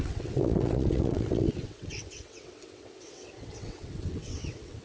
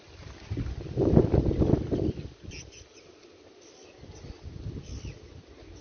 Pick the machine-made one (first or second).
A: first